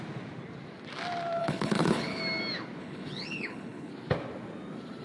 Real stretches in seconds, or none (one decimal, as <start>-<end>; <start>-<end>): 0.0-1.4; 2.2-2.8; 3.9-5.0